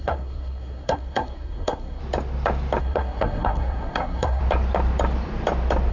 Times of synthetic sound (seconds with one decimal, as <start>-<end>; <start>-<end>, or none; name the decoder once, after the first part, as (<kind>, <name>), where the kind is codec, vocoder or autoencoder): 0.0-2.0 (codec, SNAC); 2.8-4.4